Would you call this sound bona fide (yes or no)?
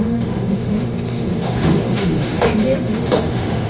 no